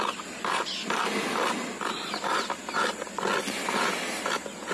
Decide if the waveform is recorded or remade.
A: recorded